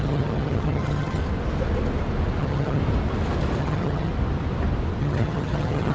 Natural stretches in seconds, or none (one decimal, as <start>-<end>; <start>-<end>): 1.2-2.4; 2.8-3.6; 4.1-5.0